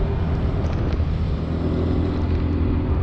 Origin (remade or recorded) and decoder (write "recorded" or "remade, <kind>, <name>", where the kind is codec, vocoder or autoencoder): recorded